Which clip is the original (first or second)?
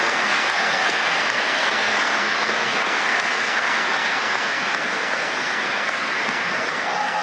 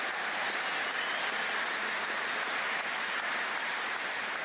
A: second